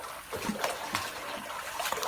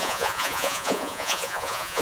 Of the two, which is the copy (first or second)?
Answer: second